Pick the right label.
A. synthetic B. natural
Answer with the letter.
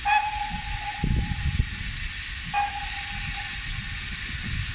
B